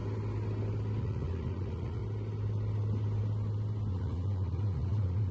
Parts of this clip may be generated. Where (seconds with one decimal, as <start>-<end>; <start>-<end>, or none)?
1.0-2.0; 3.9-5.3